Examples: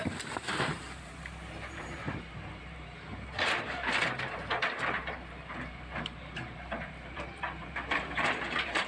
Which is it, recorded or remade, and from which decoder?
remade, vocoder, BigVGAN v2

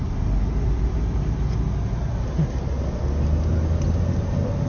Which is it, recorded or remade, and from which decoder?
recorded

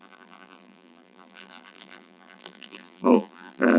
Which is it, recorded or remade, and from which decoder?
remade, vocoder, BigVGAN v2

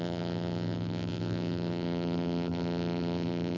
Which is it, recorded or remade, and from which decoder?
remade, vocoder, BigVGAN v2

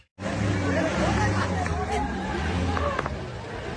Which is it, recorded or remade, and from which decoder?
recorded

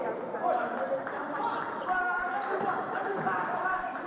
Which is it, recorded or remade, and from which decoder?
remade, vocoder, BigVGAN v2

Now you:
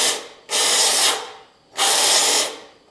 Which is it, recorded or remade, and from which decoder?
recorded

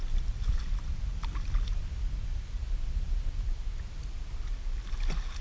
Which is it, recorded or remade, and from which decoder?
recorded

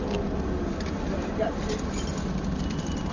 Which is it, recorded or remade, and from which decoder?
recorded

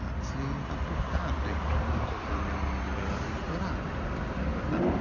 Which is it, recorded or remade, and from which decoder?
recorded